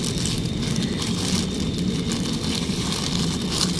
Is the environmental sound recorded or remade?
recorded